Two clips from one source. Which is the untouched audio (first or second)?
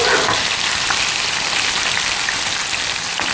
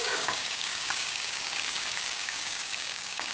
first